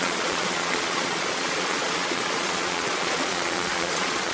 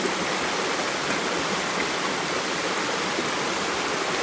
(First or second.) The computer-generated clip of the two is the first